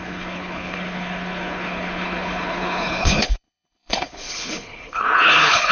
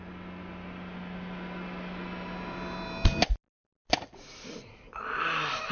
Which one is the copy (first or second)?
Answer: first